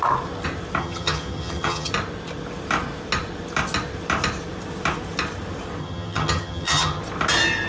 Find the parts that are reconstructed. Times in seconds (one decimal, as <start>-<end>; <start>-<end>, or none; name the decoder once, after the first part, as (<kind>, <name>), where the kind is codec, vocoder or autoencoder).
0.8-1.9 (vocoder, HiFi-GAN); 5.8-7.0

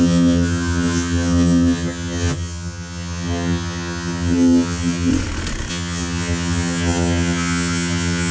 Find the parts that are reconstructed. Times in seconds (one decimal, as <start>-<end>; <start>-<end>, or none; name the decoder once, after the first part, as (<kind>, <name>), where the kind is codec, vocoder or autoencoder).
0.0-5.1 (vocoder, HiFi-GAN); 5.7-8.3

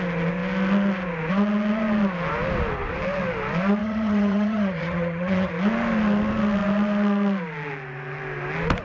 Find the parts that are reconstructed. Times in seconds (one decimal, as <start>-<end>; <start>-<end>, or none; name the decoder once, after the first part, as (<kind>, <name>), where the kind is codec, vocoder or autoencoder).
3.8-5.5 (vocoder, HiFi-GAN)

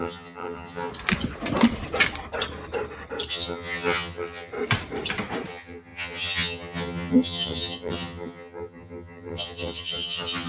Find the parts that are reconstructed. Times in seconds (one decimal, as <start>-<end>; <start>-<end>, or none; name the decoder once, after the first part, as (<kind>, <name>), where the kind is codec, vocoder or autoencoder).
0.0-0.9 (vocoder, HiFi-GAN); 3.3-4.5; 5.5-10.5

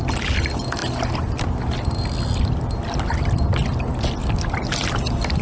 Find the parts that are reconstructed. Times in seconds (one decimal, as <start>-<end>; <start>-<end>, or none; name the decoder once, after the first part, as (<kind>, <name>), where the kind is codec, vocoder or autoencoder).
none

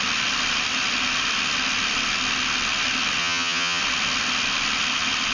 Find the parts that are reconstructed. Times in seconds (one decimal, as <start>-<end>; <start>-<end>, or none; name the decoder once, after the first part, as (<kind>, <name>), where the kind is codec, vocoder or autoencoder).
3.2-3.8 (vocoder, HiFi-GAN)

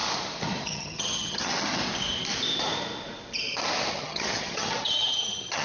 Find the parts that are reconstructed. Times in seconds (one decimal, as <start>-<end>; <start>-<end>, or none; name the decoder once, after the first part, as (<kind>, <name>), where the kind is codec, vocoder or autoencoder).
0.6-1.8 (vocoder, HiFi-GAN); 3.9-5.6

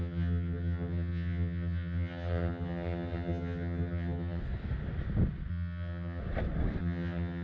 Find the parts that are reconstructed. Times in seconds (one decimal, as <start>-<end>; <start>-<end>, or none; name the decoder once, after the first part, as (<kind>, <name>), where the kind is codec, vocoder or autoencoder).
0.0-4.4 (vocoder, HiFi-GAN); 5.5-6.2; 6.8-7.4